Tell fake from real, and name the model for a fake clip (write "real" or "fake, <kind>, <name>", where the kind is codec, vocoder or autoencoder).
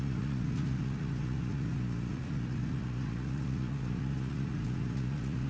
fake, vocoder, Vocos